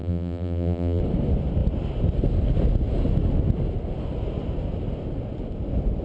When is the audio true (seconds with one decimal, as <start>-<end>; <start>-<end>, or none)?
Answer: 1.0-6.0